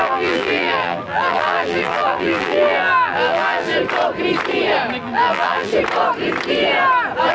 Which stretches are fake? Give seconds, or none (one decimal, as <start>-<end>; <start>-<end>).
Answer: 0.0-3.7; 5.0-5.7